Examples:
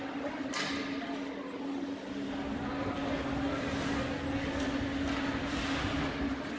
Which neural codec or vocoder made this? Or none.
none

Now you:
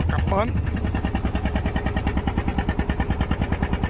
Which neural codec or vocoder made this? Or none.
none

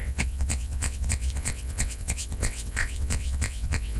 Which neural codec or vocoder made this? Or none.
vocoder, WaveNeXt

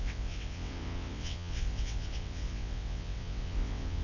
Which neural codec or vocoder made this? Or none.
vocoder, WaveNeXt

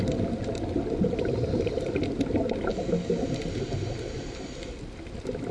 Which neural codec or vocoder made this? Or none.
none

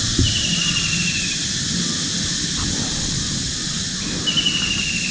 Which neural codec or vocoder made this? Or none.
none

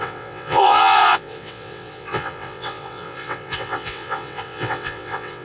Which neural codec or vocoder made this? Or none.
vocoder, WaveNeXt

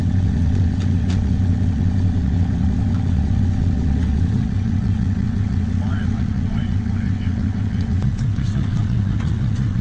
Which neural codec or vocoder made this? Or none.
vocoder, WaveNeXt